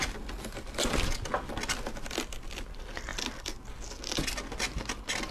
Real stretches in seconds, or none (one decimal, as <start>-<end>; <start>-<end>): 0.0-5.3

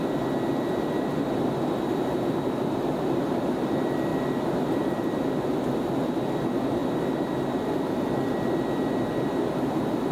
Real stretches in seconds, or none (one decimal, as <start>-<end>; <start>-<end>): 0.0-4.1; 5.2-10.1